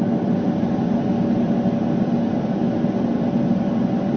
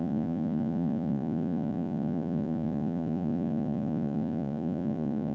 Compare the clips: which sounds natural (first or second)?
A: first